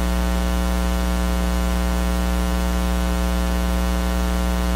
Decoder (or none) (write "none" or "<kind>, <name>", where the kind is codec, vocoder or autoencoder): none